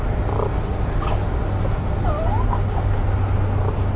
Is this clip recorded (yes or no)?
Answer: yes